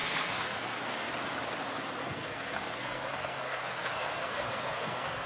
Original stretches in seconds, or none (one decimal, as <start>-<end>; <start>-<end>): 1.1-2.0